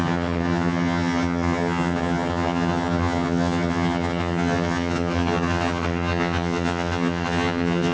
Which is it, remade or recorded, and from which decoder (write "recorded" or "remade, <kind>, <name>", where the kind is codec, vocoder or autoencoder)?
remade, vocoder, HiFi-GAN